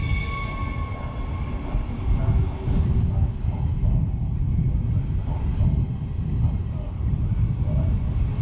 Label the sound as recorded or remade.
recorded